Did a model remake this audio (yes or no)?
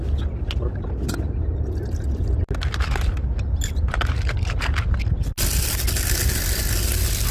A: no